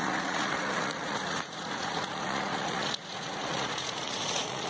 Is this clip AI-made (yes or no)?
yes